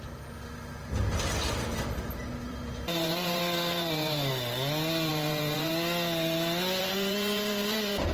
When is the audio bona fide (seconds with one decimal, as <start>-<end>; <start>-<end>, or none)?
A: 0.0-2.5; 4.3-5.1; 5.7-6.8